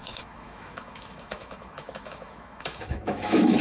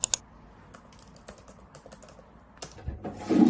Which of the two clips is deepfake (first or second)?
first